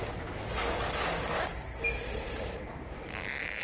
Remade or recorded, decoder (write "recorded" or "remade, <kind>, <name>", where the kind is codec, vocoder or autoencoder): recorded